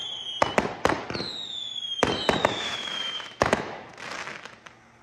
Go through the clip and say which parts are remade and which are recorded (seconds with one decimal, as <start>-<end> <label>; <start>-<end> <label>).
0.0-2.4 recorded; 2.4-3.9 remade; 3.9-5.0 recorded

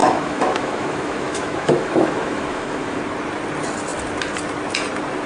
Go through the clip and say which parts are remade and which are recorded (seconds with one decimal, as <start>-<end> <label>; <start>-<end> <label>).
0.0-3.0 remade; 3.0-5.3 recorded

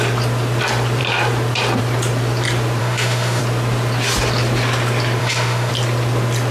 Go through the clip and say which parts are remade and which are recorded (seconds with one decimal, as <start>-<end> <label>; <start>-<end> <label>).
0.0-2.8 recorded; 2.8-3.4 remade; 3.4-5.2 recorded; 5.2-5.7 remade; 5.7-6.5 recorded

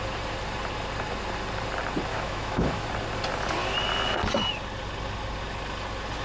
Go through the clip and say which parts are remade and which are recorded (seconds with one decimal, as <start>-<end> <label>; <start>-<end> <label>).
0.0-2.1 recorded; 2.1-2.9 remade; 2.9-6.2 recorded

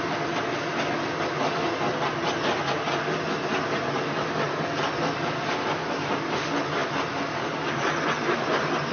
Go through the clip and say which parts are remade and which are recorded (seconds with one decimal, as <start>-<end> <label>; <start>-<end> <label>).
0.0-8.9 recorded